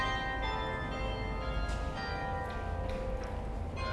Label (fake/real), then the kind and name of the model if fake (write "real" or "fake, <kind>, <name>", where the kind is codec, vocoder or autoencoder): real